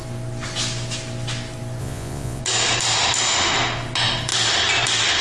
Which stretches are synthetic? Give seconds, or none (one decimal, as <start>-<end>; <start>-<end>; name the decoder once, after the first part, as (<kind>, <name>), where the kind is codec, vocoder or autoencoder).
1.8-2.4 (vocoder, Vocos)